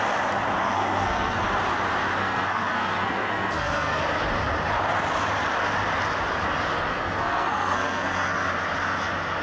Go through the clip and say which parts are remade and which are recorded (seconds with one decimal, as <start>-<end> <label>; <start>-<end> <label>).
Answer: 0.0-0.6 recorded; 0.6-1.4 remade; 1.4-2.2 recorded; 2.2-4.0 remade; 4.0-6.9 recorded; 6.9-8.5 remade; 8.5-9.4 recorded